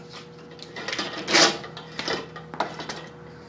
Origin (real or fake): real